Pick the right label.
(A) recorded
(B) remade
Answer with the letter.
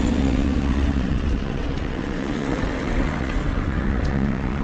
B